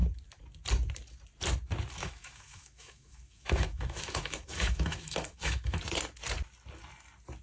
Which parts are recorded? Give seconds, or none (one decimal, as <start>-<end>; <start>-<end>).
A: 0.0-2.0; 5.8-7.4